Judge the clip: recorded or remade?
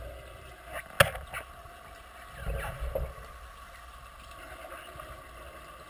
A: recorded